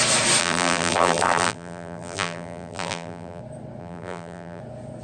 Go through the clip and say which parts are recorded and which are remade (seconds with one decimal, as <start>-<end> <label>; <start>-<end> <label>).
0.0-0.4 recorded; 0.4-3.4 remade; 3.4-3.8 recorded; 3.8-4.6 remade; 4.6-5.0 recorded